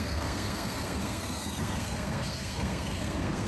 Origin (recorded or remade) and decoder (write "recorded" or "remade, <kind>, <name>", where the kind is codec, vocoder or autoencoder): remade, codec, SNAC